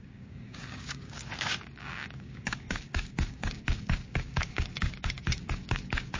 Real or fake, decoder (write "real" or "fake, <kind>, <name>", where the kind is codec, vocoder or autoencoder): fake, codec, DAC